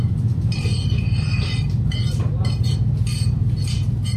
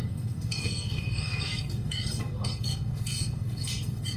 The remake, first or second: second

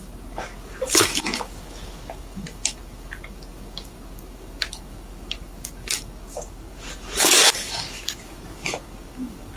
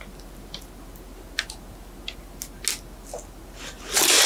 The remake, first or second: first